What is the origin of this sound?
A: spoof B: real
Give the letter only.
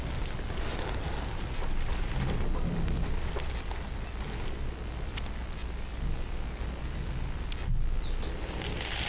B